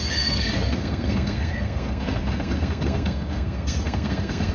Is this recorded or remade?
remade